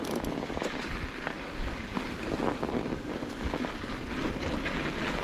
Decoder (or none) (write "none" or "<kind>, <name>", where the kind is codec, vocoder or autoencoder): none